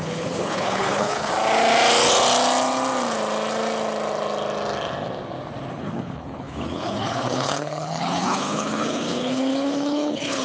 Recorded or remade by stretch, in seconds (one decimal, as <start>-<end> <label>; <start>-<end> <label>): 0.0-1.3 remade; 1.3-5.7 recorded; 5.7-10.4 remade